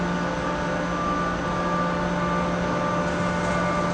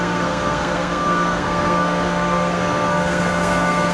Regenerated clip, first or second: second